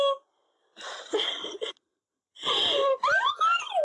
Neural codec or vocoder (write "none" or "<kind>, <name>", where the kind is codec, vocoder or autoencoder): none